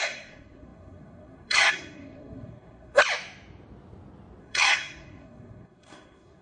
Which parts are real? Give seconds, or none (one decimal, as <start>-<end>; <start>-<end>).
3.0-4.4